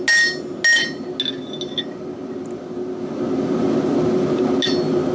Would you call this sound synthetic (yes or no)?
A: no